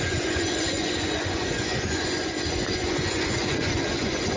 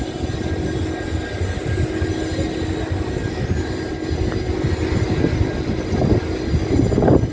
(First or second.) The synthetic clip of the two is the first